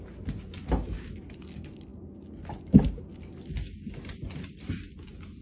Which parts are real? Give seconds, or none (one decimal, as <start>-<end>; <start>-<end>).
0.0-5.4